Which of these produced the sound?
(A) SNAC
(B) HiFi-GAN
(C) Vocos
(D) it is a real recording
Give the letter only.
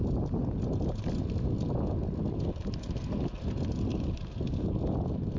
D